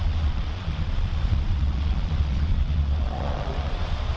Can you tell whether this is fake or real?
fake